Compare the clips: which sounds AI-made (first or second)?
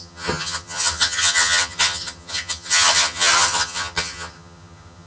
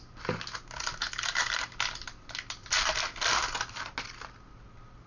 first